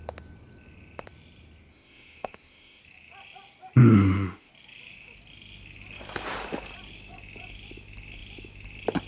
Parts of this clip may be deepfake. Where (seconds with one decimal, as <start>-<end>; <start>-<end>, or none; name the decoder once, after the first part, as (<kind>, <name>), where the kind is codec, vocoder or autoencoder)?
1.7-2.8 (autoencoder, DAC-VAE); 3.8-4.5